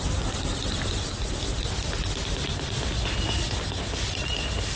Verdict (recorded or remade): remade